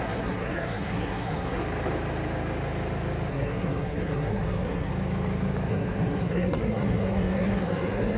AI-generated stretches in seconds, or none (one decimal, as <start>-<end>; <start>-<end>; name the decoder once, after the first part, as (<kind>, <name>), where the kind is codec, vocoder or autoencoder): 0.0-1.6 (codec, SNAC); 3.3-4.9; 5.7-8.2